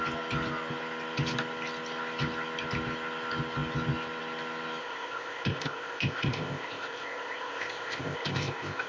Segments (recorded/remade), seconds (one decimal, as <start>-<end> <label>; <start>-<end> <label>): 0.0-4.8 recorded; 4.8-8.9 remade